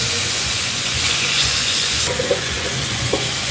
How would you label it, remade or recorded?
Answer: remade